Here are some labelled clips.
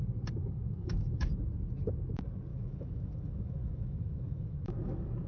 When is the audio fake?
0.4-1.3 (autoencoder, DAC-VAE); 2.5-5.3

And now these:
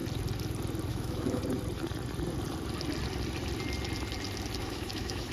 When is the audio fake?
0.9-1.4 (autoencoder, DAC-VAE); 4.6-5.3

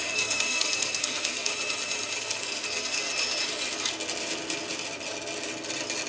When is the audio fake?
0.0-1.5 (codec, SNAC); 2.2-3.1

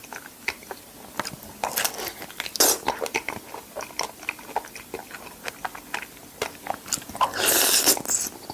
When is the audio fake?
none

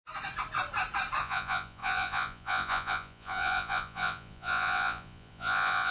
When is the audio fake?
1.2-5.9 (vocoder, Vocos)

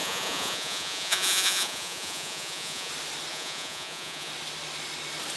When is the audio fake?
0.0-2.9 (vocoder, Vocos); 3.3-4.3

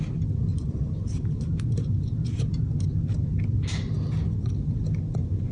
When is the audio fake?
0.5-2.9 (vocoder, BigVGAN v2)